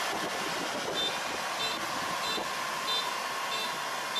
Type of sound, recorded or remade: recorded